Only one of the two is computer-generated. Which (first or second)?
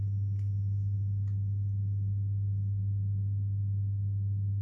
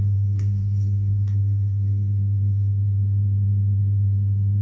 second